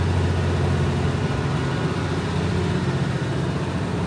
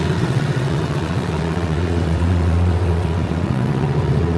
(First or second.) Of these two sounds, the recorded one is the first